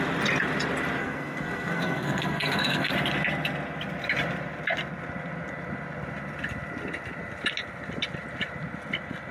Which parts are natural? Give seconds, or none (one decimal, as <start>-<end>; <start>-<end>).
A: 0.0-1.0; 2.9-9.3